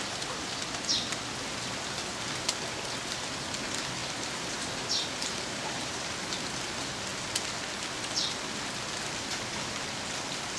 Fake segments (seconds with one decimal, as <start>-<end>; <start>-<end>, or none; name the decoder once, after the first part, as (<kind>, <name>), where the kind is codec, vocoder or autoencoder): 4.0-6.1 (vocoder, BigVGAN v2)